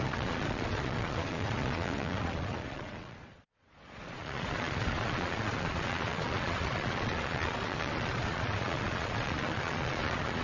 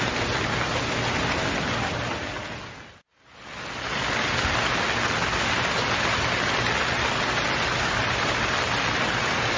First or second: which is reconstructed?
first